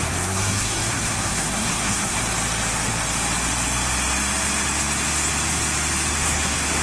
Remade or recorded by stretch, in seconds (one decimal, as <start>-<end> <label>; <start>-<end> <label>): 0.0-2.2 remade; 2.2-6.1 recorded; 6.1-6.8 remade